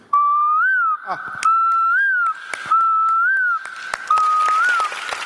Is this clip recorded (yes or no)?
yes